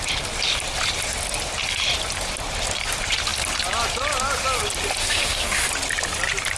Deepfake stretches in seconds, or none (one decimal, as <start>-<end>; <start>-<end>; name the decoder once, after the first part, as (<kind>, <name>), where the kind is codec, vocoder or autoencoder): 5.0-5.7 (autoencoder, DAC-VAE)